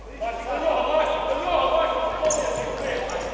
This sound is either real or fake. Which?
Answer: real